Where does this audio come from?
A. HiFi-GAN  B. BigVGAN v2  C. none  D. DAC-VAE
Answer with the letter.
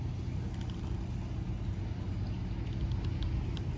C